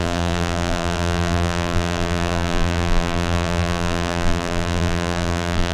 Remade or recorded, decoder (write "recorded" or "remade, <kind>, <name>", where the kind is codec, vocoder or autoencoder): remade, vocoder, BigVGAN v2